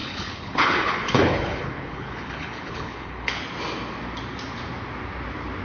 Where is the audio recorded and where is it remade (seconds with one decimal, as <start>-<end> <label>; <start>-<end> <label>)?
0.0-3.4 remade; 3.4-5.6 recorded